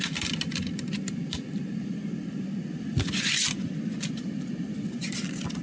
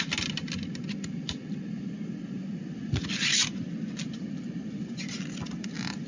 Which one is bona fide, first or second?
second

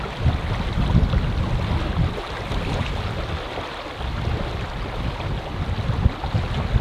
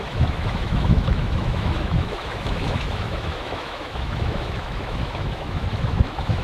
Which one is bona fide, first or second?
first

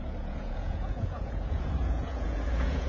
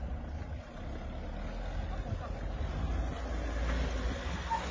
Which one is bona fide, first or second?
second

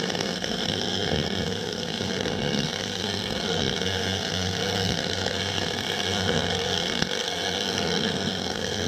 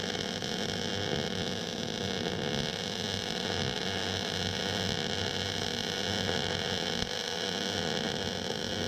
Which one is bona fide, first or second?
second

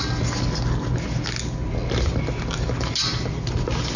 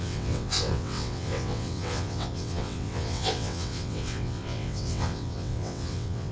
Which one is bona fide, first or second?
first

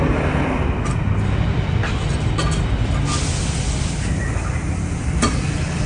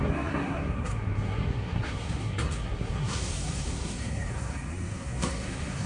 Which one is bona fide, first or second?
first